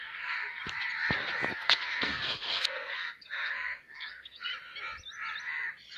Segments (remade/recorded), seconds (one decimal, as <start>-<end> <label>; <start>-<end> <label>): 0.0-0.6 remade; 0.6-1.5 recorded; 1.5-4.5 remade; 4.5-6.0 recorded